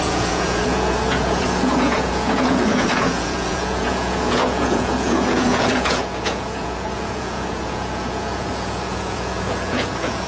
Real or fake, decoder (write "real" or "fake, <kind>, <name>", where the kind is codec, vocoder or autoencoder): fake, vocoder, Vocos